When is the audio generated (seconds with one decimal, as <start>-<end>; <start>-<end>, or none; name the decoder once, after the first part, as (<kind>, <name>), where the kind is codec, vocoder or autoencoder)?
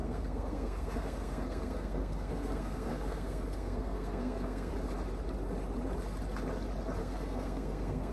0.0-4.7 (codec, SNAC); 7.0-8.1